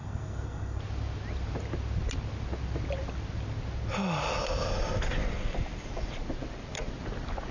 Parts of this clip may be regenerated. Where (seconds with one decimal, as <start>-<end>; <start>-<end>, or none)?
0.0-0.8